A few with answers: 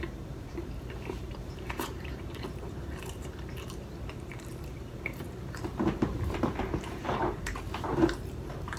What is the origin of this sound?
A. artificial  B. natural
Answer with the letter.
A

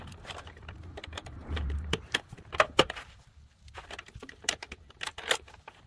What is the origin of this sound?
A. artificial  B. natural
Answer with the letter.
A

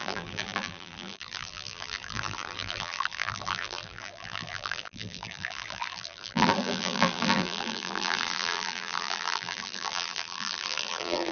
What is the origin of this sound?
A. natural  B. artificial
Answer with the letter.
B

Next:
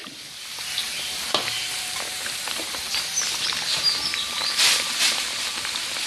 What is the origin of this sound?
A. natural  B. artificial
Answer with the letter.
B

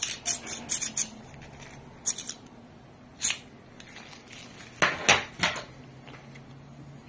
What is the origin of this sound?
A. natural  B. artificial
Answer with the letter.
A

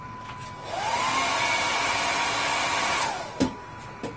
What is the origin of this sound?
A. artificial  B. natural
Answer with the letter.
B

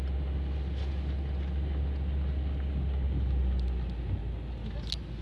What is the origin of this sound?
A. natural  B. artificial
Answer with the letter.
A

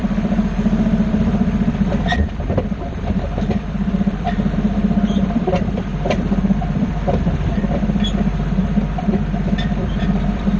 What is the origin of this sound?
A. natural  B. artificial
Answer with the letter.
B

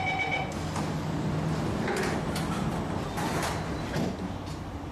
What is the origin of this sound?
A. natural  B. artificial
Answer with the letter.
A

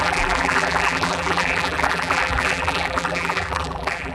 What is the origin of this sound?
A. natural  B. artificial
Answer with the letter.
B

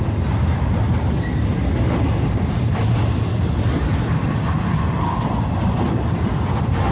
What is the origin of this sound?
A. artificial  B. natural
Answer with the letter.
B